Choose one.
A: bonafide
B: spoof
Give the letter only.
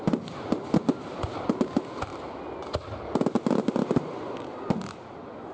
A